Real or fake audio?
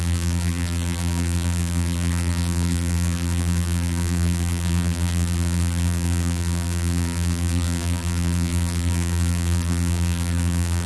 fake